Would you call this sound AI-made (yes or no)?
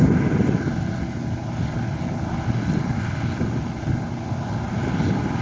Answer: no